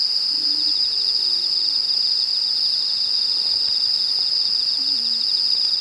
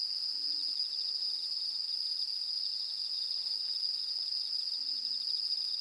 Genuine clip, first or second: first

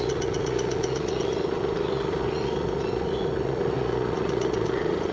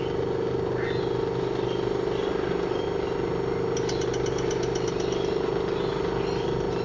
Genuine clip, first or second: second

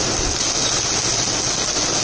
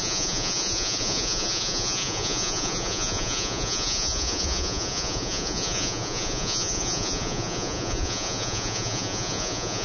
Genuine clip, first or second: first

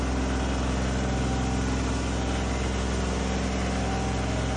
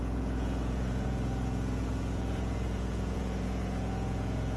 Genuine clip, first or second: first